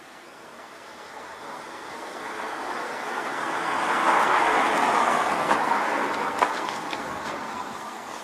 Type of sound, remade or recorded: remade